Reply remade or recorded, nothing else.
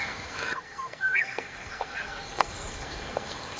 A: remade